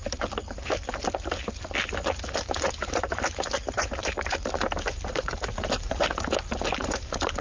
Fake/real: fake